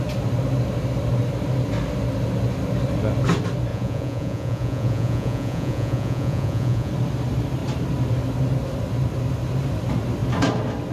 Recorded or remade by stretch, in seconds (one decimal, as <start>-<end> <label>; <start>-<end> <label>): 0.0-3.7 recorded; 3.7-6.9 remade; 6.9-10.9 recorded